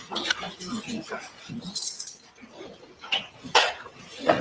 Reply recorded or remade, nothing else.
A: remade